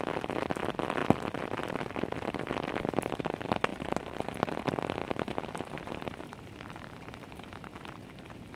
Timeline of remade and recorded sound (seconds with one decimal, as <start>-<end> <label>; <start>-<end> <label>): 0.0-3.7 recorded; 3.7-4.4 remade; 4.4-5.0 recorded; 5.0-8.6 remade